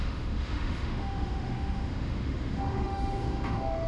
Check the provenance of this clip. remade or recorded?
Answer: remade